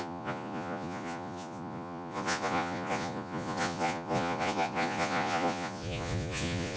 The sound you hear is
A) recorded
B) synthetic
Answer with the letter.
B